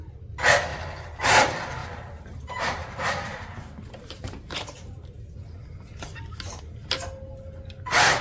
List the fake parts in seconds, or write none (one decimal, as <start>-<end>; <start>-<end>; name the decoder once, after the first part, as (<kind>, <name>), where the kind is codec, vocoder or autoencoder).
1.8-5.2 (vocoder, BigVGAN v2)